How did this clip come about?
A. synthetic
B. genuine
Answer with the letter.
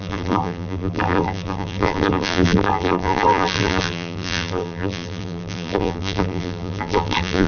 A